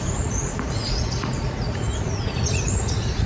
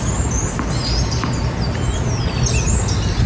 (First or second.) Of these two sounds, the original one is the second